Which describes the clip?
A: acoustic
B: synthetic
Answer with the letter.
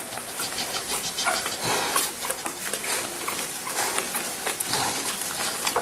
B